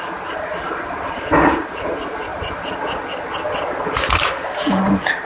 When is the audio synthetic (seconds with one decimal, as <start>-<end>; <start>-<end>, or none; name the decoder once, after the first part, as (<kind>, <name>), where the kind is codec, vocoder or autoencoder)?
none